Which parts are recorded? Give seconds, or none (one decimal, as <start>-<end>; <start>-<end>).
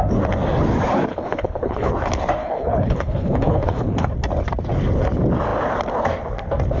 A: 0.0-1.1; 1.9-2.4; 4.1-6.8